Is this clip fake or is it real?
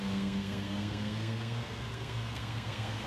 fake